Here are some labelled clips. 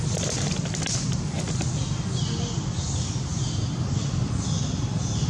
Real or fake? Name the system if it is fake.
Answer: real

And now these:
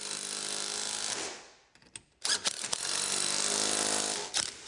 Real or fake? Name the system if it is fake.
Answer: real